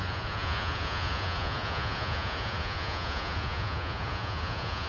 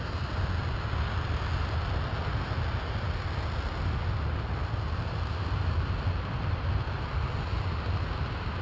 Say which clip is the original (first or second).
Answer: second